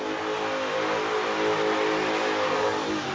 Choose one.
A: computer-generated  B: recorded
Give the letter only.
B